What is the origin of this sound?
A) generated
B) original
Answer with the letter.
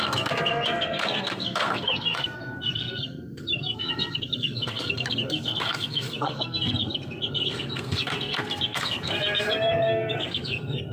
A